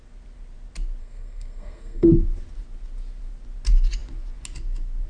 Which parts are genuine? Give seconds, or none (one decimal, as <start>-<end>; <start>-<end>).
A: 0.0-1.0; 2.1-5.1